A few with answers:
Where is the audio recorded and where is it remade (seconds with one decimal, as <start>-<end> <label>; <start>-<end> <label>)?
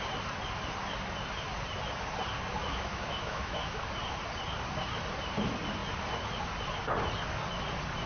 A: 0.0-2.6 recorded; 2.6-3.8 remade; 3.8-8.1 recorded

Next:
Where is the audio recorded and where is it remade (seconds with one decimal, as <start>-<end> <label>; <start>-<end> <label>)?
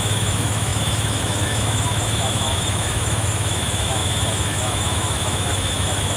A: 0.0-6.2 remade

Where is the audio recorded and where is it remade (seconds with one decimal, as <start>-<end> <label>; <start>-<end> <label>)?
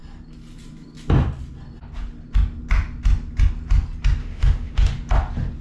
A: 0.0-4.2 recorded; 4.2-4.9 remade; 4.9-5.6 recorded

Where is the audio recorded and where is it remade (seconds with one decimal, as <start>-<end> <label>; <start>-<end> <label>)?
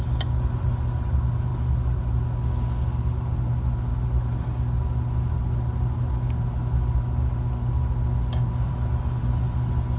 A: 0.0-10.0 recorded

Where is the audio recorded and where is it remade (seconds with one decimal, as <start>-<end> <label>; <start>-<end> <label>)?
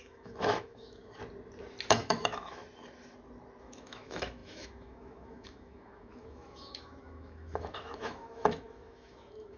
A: 0.0-1.2 remade; 1.2-1.9 recorded; 1.9-2.6 remade; 2.6-3.6 recorded; 3.6-9.6 remade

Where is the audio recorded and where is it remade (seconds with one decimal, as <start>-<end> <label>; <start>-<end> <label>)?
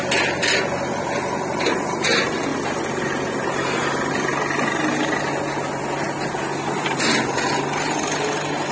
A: 0.0-8.7 recorded